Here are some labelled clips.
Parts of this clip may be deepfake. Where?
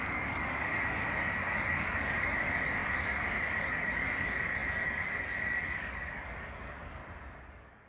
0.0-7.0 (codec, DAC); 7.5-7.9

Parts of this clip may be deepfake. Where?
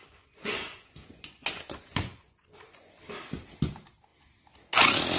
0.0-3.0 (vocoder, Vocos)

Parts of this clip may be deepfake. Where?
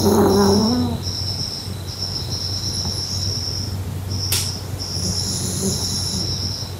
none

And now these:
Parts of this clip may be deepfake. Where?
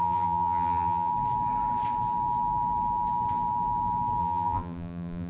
0.0-1.1 (vocoder, BigVGAN v2); 4.2-5.3